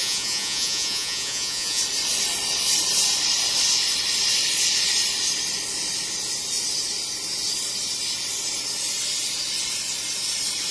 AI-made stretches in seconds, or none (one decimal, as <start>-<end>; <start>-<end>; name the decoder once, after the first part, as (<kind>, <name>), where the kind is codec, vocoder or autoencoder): 0.0-1.8 (vocoder, Vocos)